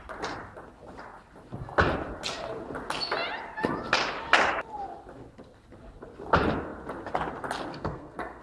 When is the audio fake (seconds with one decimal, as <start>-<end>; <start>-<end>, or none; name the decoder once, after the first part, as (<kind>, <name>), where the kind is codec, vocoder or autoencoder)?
7.7-8.4 (codec, SNAC)